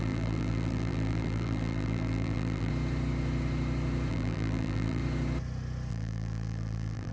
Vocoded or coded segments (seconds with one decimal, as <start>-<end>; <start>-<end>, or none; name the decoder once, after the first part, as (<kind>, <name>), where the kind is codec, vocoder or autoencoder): 0.0-2.7 (vocoder, BigVGAN v2); 4.1-5.0; 5.9-7.1